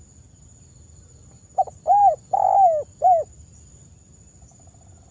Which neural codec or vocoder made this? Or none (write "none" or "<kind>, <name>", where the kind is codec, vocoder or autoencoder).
none